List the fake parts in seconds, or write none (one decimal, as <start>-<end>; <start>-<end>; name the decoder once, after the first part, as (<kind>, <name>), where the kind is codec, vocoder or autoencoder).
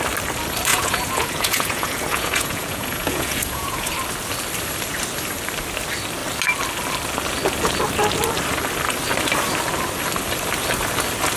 0.7-3.9 (vocoder, Vocos)